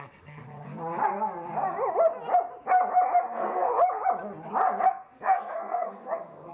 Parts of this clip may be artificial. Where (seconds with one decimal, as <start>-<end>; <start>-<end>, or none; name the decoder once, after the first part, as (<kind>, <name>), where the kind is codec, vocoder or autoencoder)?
0.0-0.4 (codec, SNAC); 3.2-3.7; 4.9-6.5